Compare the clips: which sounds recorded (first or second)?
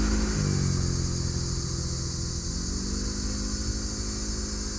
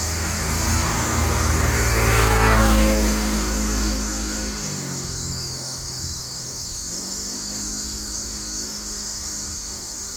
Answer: first